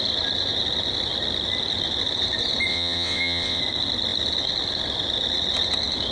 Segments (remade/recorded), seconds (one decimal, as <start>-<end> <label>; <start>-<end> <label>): 0.0-2.7 recorded; 2.7-3.6 remade; 3.6-6.1 recorded